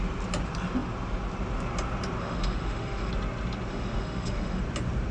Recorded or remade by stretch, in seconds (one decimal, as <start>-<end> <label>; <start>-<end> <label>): 0.0-2.2 recorded; 2.2-3.1 remade; 3.1-3.7 recorded; 3.7-4.6 remade; 4.6-5.1 recorded